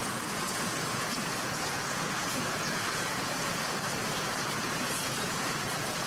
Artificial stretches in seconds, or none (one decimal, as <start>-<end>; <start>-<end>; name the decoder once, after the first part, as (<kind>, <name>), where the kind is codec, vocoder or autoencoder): 0.0-6.1 (vocoder, Vocos)